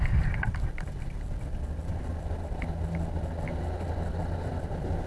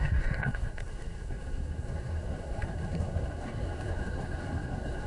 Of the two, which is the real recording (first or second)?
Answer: first